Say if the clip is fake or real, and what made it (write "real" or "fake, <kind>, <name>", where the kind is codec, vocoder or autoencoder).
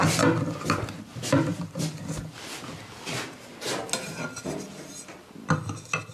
real